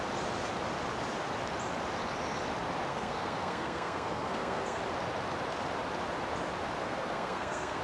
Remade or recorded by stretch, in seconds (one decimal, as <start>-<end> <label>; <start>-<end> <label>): 0.0-2.9 recorded; 2.9-4.8 remade; 4.8-6.8 recorded; 6.8-7.8 remade